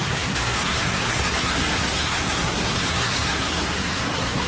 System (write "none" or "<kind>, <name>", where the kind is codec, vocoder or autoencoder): codec, SNAC